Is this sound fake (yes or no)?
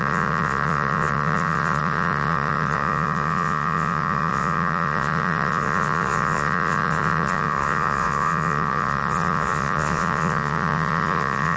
yes